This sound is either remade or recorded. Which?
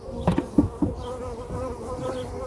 recorded